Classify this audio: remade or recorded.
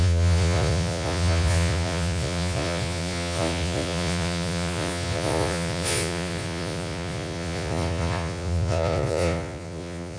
remade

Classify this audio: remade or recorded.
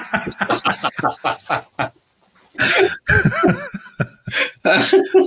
recorded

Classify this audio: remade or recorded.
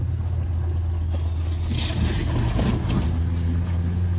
recorded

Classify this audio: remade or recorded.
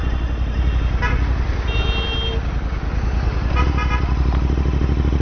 recorded